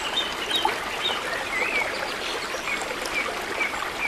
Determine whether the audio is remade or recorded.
recorded